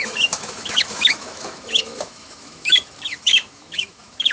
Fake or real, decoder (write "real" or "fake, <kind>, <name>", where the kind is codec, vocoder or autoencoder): fake, autoencoder, DAC-VAE